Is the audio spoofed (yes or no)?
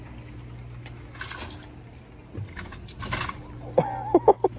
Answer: no